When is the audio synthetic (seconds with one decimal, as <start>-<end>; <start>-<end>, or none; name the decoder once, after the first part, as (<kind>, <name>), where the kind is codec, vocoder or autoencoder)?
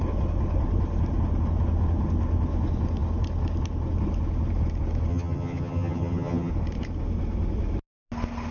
5.1-6.5 (vocoder, HiFi-GAN)